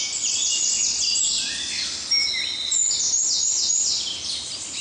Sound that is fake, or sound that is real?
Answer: real